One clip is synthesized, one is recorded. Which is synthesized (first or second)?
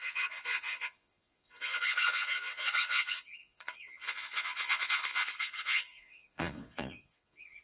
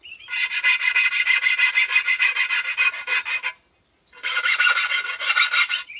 first